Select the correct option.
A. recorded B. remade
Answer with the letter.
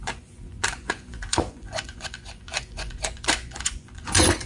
B